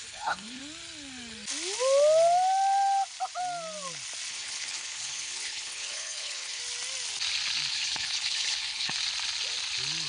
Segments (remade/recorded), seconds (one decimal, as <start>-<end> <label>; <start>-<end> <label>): 0.0-0.6 remade; 0.6-4.3 recorded; 4.3-6.6 remade; 6.6-7.7 recorded; 7.7-8.9 remade; 8.9-10.1 recorded